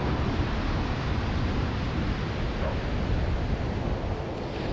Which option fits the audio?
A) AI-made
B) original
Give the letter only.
B